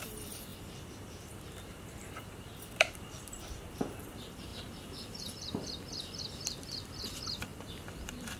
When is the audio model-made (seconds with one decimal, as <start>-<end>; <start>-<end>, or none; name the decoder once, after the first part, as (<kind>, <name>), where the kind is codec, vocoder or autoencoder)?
0.0-8.4 (vocoder, BigVGAN v2)